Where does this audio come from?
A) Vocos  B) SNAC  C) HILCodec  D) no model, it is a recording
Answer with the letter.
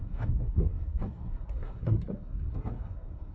B